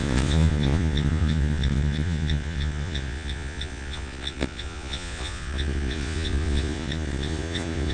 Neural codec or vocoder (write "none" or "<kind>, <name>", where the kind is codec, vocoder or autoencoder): vocoder, Vocos